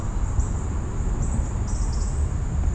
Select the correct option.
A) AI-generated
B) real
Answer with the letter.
B